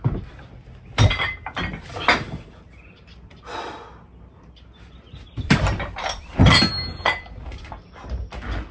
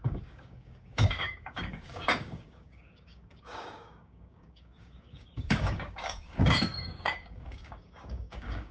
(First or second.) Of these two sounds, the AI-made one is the second